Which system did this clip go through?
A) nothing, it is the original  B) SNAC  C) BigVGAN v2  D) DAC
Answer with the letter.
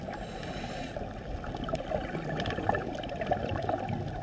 A